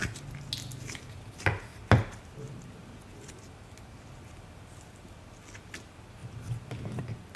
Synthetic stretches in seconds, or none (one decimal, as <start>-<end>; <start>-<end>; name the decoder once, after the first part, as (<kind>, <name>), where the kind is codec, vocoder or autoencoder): none